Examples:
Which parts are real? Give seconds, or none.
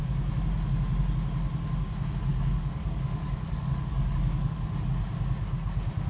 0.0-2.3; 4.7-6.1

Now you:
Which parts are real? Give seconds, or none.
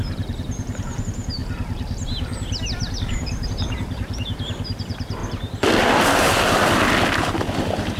5.2-7.1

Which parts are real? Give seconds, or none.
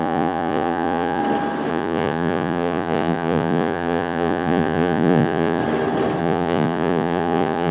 1.2-1.7; 5.6-6.2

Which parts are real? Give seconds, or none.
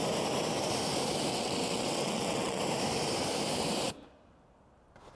0.0-1.3; 2.6-5.1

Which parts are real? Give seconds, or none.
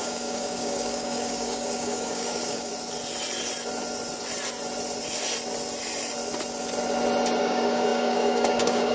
2.7-7.4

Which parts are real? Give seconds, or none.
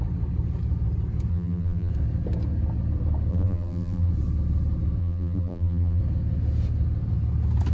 0.0-1.3; 1.9-3.3; 4.1-5.0; 6.0-7.7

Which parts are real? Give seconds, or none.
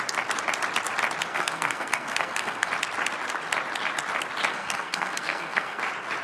0.0-1.3; 2.7-4.5; 5.8-6.2